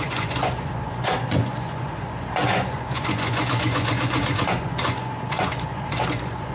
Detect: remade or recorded remade